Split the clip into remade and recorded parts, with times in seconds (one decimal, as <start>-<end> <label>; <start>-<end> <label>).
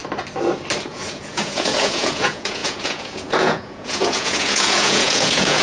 0.0-0.9 recorded; 0.9-5.6 remade